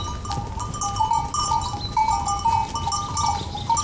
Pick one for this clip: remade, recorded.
recorded